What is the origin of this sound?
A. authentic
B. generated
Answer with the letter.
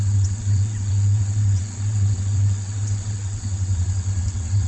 B